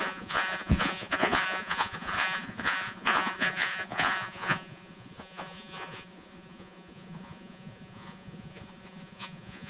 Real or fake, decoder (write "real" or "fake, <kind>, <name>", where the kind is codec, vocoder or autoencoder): fake, vocoder, Vocos